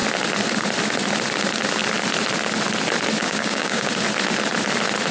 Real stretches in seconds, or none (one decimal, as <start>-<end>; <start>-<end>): 0.0-3.2; 3.9-5.1